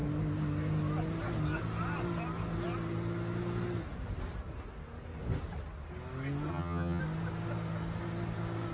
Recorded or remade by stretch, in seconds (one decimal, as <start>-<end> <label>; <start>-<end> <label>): 0.0-6.5 recorded; 6.5-7.0 remade; 7.0-8.7 recorded

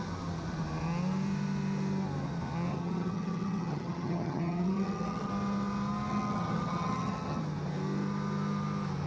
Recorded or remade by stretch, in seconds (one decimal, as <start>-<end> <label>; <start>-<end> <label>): 0.0-2.7 recorded; 2.7-5.3 remade; 5.3-6.1 recorded; 6.1-7.4 remade; 7.4-9.1 recorded

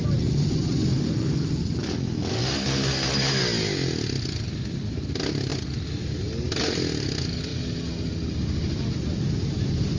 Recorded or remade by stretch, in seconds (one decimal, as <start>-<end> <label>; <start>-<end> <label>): 0.0-10.0 recorded

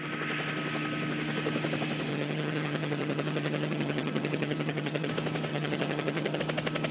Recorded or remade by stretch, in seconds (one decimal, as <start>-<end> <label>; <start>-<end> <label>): 0.0-2.1 recorded; 2.1-5.1 remade; 5.1-5.5 recorded; 5.5-6.4 remade; 6.4-6.9 recorded